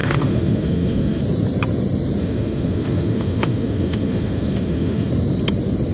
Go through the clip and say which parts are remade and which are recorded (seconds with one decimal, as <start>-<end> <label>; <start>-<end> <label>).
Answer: 0.0-1.2 remade; 1.2-2.2 recorded; 2.2-5.1 remade; 5.1-5.9 recorded